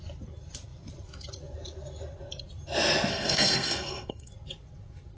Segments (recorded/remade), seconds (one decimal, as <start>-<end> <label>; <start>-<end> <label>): 0.0-3.1 recorded; 3.1-4.3 remade; 4.3-5.2 recorded